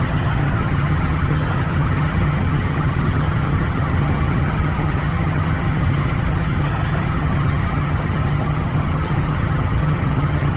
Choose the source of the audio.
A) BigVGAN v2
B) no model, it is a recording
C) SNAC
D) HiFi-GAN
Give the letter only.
D